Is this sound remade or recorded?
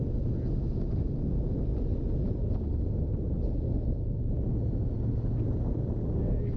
recorded